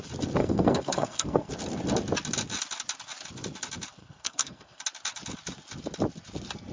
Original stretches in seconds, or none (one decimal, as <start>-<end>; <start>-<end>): 0.0-0.4; 1.5-4.0; 4.8-6.7